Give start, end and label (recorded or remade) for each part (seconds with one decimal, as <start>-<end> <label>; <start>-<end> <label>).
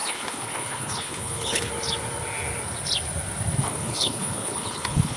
0.0-1.7 remade; 1.7-3.6 recorded; 3.6-5.2 remade